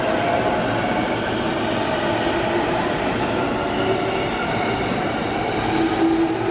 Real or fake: real